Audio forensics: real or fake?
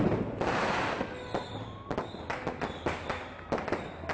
real